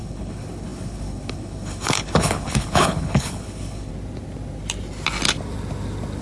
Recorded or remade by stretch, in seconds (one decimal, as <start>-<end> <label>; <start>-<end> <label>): 0.0-3.9 remade; 3.9-6.2 recorded